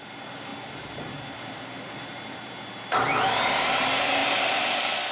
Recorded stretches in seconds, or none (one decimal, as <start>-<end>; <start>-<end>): none